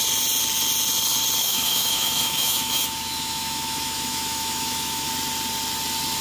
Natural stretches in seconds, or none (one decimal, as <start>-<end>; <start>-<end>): 0.0-1.4; 5.1-6.2